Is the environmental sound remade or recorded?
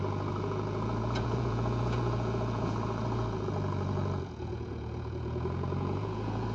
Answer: remade